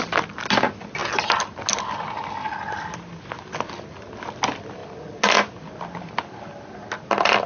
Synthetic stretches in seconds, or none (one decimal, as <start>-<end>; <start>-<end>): none